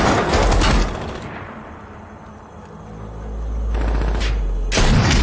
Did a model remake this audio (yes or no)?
no